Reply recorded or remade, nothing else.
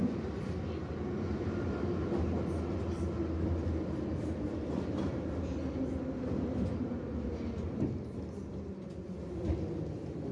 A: recorded